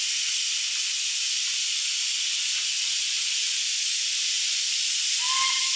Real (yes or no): yes